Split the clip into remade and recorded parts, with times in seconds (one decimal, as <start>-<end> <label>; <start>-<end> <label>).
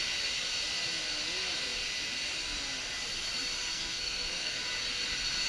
0.0-3.7 recorded; 3.7-4.6 remade; 4.6-5.5 recorded